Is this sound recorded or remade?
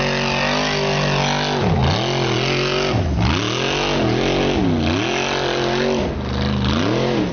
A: recorded